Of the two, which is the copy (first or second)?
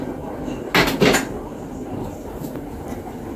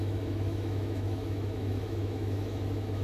second